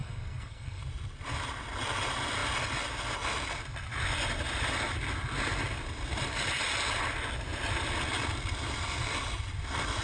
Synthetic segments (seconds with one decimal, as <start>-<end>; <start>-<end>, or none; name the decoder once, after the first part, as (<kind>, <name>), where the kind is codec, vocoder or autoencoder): 0.0-0.8 (codec, SNAC)